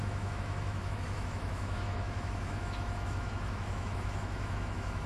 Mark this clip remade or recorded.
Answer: remade